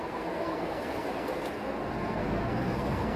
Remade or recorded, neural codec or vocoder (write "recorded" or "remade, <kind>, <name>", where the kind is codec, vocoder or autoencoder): remade, codec, SNAC